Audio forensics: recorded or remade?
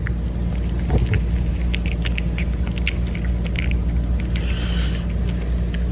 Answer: recorded